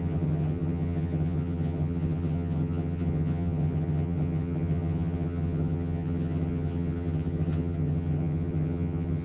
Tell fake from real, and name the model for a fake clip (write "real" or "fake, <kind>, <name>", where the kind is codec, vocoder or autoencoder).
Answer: fake, vocoder, HiFi-GAN